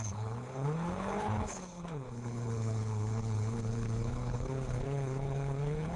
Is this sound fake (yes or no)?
yes